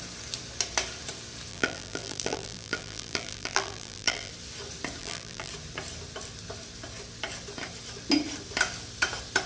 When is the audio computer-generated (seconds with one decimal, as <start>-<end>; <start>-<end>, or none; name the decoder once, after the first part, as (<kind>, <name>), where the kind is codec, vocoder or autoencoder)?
1.5-4.3 (vocoder, BigVGAN v2); 5.0-5.5